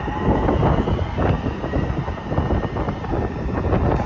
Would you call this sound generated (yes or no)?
no